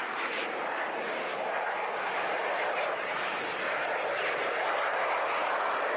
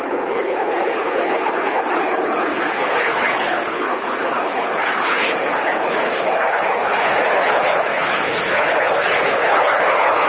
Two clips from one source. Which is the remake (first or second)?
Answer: second